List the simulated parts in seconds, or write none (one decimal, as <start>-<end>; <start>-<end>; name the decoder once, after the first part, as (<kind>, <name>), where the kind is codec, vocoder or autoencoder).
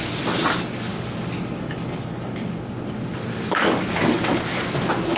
none